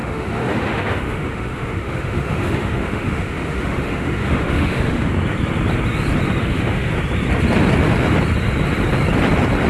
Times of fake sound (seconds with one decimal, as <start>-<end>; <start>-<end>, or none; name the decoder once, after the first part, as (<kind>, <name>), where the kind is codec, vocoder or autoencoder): 0.0-5.1 (autoencoder, DAC-VAE); 6.4-6.9